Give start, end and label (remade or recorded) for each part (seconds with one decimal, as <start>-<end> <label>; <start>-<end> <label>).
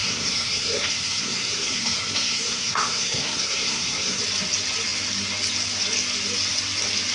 0.0-4.2 remade; 4.2-7.1 recorded